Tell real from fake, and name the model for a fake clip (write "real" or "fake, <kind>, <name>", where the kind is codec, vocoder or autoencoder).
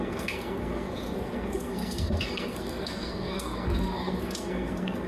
fake, codec, SNAC